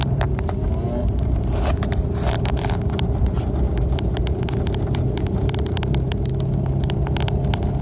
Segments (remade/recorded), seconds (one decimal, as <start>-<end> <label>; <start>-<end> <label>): 0.0-6.3 remade; 6.3-7.8 recorded

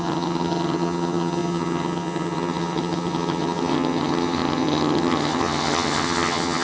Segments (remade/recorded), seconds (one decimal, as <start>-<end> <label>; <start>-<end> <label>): 0.0-6.6 remade

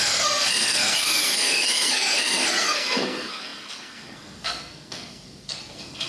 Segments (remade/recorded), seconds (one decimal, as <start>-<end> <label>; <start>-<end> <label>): 0.0-6.1 remade

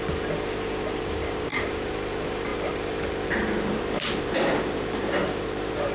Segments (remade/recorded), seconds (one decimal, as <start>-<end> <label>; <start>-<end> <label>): 0.0-5.9 remade

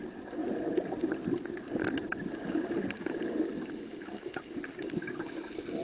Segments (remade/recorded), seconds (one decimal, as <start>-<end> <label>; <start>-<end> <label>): 0.0-0.4 recorded; 0.4-1.7 remade; 1.7-3.9 recorded; 3.9-4.5 remade; 4.5-5.8 recorded

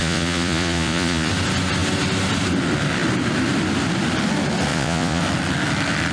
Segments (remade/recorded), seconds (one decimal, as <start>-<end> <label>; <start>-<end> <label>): 0.0-1.3 remade; 1.3-4.7 recorded; 4.7-5.2 remade; 5.2-6.1 recorded

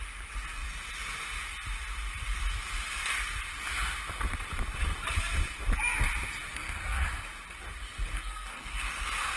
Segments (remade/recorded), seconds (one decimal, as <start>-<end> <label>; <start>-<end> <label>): 0.0-6.5 recorded; 6.5-7.1 remade; 7.1-8.1 recorded; 8.1-8.9 remade; 8.9-9.4 recorded